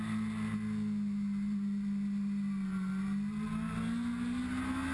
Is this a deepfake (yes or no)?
no